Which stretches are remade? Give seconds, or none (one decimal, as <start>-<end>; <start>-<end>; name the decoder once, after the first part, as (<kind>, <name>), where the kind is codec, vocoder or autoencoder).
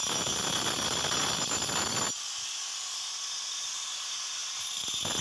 none